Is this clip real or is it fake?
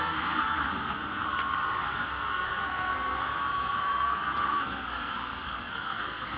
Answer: fake